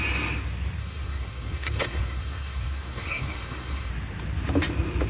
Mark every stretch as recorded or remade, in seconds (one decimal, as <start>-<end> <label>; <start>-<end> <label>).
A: 0.0-0.8 recorded; 0.8-3.9 remade; 3.9-5.1 recorded